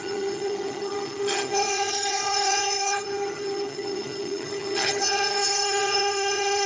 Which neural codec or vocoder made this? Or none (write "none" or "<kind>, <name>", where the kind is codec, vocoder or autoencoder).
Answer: vocoder, HiFi-GAN